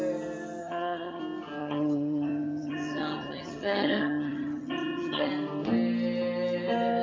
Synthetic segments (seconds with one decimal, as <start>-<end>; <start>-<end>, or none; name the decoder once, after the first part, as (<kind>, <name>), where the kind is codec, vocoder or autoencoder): 0.6-1.2 (vocoder, HiFi-GAN); 1.6-5.3